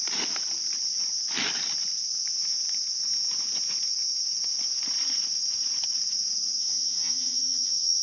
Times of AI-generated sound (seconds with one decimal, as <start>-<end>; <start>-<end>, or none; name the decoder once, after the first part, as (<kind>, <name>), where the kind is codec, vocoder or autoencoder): 6.6-8.0 (vocoder, HiFi-GAN)